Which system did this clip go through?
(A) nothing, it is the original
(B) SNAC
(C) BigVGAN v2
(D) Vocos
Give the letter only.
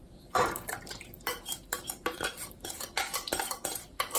C